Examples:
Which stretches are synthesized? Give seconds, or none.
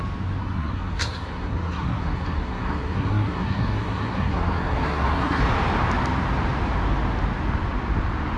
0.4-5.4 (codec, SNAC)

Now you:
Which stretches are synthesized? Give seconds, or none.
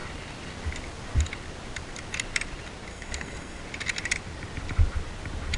2.9-3.6 (codec, SNAC)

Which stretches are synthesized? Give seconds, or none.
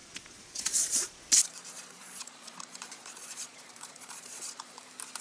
0.0-1.2 (vocoder, Vocos); 1.7-4.8